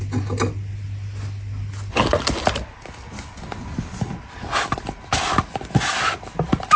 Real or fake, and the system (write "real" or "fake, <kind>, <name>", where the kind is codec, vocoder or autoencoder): real